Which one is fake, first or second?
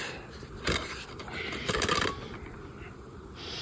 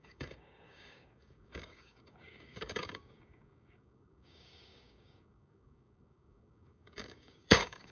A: second